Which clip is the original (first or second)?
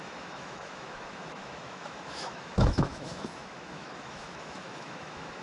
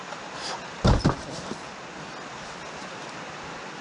second